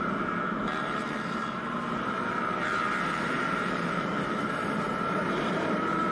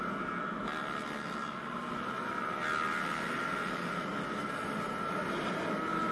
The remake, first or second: first